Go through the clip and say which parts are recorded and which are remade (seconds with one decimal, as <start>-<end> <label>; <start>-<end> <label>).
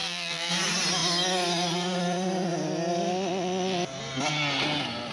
0.0-0.5 remade; 0.5-5.1 recorded